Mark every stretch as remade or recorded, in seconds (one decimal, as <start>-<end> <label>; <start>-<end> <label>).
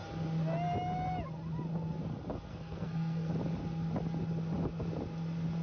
0.0-2.5 recorded; 2.5-3.3 remade; 3.3-5.6 recorded